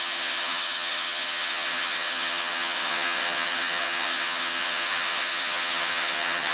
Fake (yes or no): yes